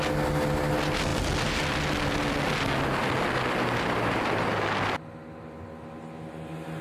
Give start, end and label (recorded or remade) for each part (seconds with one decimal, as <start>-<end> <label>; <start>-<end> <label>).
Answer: 0.0-6.8 recorded